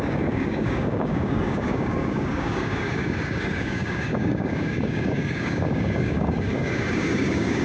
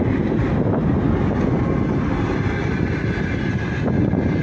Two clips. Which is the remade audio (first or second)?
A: first